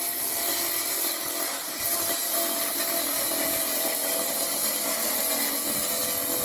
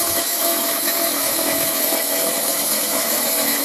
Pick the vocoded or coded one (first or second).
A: second